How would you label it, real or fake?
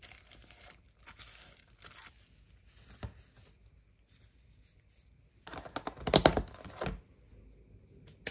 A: real